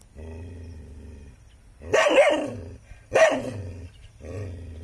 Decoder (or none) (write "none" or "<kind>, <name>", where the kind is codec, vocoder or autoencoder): none